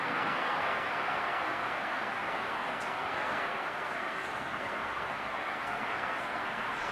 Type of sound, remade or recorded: remade